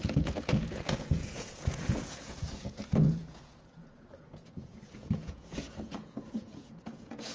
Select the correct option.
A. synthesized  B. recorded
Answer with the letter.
A